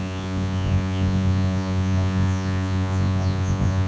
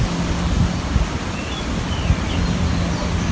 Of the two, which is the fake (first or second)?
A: first